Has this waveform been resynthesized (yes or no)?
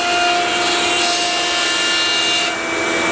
no